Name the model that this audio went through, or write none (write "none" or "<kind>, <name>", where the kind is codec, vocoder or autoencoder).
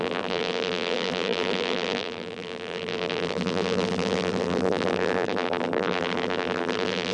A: vocoder, BigVGAN v2